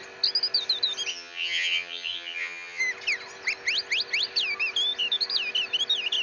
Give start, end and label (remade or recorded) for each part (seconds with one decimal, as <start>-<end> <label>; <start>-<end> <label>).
0.0-1.1 recorded; 1.1-2.8 remade; 2.8-6.2 recorded